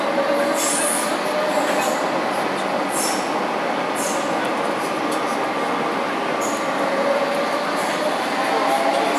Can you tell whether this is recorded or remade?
recorded